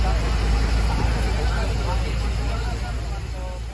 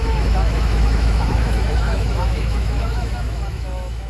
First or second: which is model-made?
second